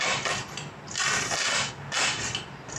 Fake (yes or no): no